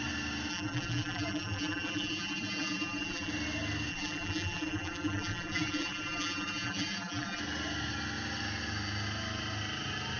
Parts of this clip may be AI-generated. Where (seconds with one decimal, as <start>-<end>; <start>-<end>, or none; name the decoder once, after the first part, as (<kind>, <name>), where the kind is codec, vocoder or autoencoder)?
0.5-3.3 (vocoder, BigVGAN v2); 3.9-7.4